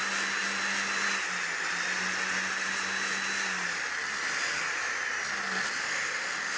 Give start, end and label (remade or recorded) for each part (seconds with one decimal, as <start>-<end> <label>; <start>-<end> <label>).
0.0-5.8 recorded; 5.8-6.6 remade